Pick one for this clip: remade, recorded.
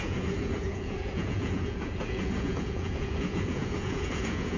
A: remade